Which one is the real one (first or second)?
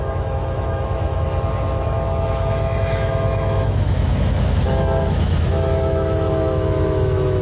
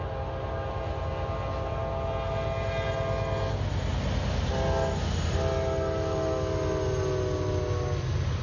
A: second